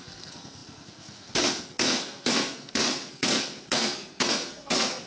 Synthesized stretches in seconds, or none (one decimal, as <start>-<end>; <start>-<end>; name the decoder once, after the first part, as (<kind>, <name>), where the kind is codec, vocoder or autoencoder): 0.0-5.1 (codec, SNAC)